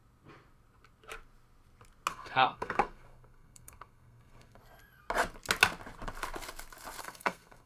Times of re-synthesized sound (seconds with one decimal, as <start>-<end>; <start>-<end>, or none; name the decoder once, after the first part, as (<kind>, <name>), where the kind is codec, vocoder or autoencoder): 2.1-4.6 (codec, SNAC); 7.0-7.7